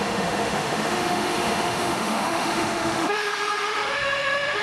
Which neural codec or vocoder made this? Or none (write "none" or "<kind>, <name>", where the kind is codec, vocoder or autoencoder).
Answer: autoencoder, DAC-VAE